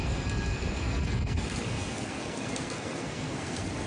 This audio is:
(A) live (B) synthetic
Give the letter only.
B